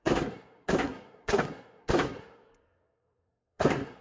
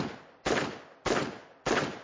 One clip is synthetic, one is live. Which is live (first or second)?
second